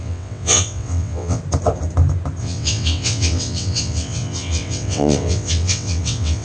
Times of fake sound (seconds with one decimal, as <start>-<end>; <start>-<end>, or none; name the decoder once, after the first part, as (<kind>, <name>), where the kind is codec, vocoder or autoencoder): 0.0-1.4 (vocoder, WaveNeXt); 2.4-6.4